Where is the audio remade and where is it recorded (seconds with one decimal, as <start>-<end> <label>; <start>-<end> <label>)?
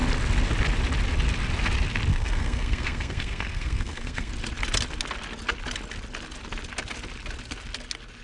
0.0-2.1 recorded; 2.1-4.3 remade; 4.3-8.2 recorded